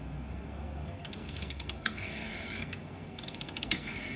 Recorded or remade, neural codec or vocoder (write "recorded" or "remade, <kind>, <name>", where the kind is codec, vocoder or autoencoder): remade, codec, SNAC